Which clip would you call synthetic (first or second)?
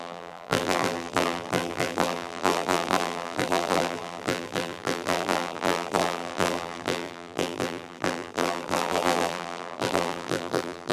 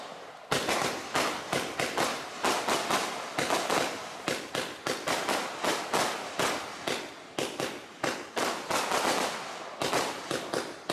first